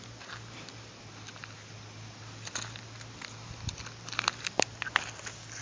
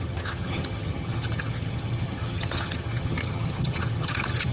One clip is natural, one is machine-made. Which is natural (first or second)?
first